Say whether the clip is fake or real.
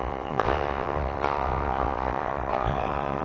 fake